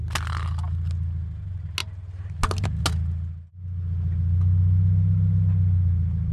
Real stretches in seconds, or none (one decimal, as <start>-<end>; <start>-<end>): 0.0-6.3